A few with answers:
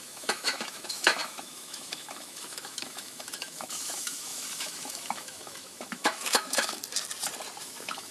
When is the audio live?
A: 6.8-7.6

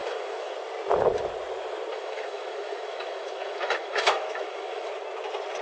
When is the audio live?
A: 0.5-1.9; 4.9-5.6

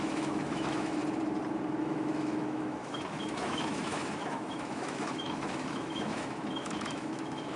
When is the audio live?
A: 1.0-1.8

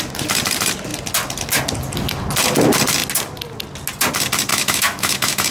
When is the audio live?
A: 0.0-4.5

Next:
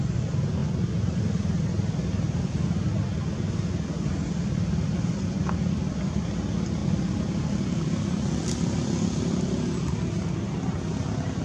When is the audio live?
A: 0.0-11.4

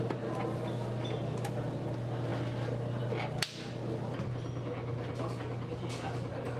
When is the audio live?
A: 0.0-6.6

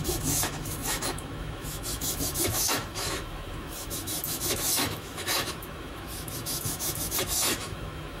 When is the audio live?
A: none